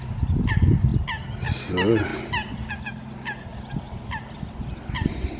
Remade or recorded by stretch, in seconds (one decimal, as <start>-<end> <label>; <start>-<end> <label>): 0.0-0.9 remade; 0.9-1.7 recorded; 1.7-2.1 remade; 2.1-2.9 recorded; 2.9-3.5 remade; 3.5-4.6 recorded; 4.6-5.4 remade